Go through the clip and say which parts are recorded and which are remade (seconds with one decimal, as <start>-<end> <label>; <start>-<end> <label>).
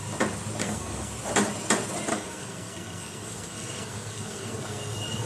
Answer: 0.0-0.6 recorded; 0.6-1.1 remade; 1.1-2.1 recorded; 2.1-5.3 remade